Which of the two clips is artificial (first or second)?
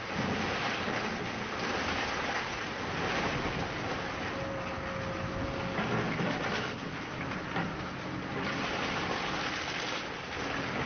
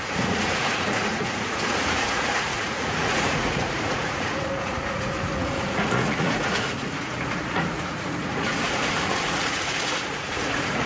second